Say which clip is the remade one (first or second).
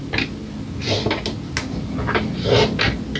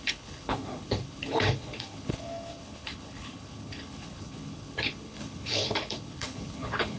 second